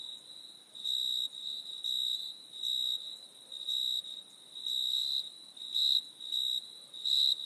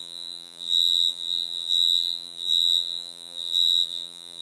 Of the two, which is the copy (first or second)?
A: second